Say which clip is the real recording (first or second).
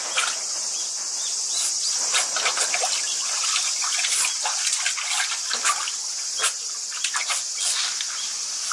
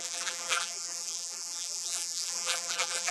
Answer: first